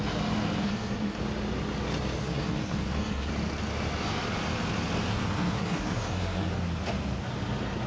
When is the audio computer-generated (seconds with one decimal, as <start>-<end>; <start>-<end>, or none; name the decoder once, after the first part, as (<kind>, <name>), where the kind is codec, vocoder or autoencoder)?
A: 0.6-1.2 (codec, SNAC); 2.2-3.3; 5.1-6.5